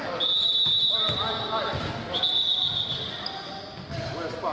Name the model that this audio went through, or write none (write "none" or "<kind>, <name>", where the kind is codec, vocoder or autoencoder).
none